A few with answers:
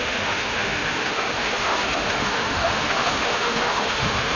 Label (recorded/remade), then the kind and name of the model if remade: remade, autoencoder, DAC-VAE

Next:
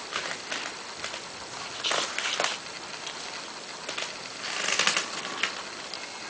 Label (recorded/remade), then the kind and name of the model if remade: recorded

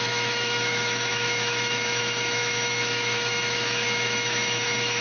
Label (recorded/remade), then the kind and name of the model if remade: remade, autoencoder, DAC-VAE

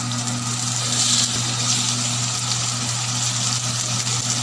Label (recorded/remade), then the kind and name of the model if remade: recorded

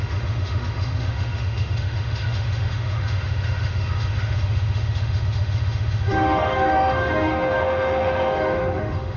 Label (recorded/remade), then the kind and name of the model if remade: remade, autoencoder, DAC-VAE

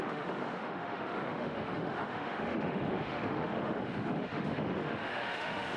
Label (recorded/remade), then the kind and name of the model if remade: remade, autoencoder, DAC-VAE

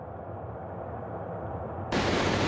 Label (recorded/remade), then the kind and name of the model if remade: recorded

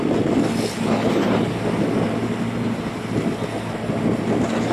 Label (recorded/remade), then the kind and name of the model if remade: recorded